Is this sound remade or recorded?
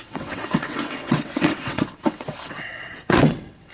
remade